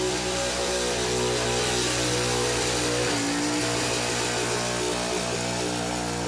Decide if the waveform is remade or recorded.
recorded